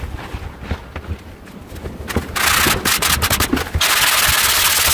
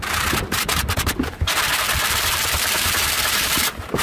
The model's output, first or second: second